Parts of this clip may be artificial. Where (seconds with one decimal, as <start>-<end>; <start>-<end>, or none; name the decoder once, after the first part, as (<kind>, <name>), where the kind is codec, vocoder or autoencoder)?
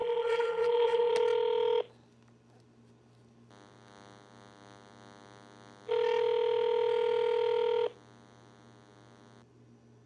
0.0-1.1 (vocoder, BigVGAN v2)